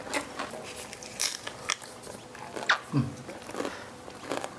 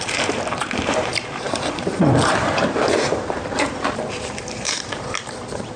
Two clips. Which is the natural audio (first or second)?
first